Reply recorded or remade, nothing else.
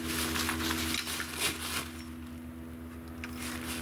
recorded